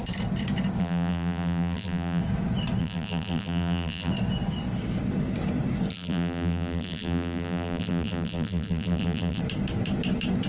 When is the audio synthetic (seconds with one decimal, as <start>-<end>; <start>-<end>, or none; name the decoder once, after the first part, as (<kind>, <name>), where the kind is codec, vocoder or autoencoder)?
0.8-2.2 (vocoder, BigVGAN v2); 2.8-4.1; 5.9-9.4